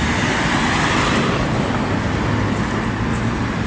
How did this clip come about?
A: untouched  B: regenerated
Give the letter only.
A